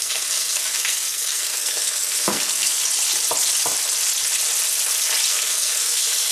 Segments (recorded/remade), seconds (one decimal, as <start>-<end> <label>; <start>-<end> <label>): 0.0-2.8 remade; 2.8-5.3 recorded; 5.3-6.3 remade